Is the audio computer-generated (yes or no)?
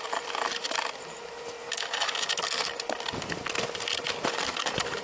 no